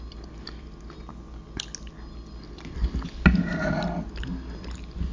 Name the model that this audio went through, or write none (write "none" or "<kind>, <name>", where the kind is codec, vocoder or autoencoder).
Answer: none